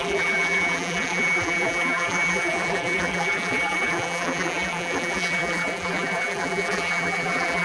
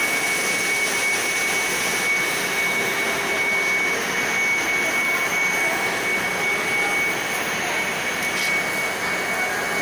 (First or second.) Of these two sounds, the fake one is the first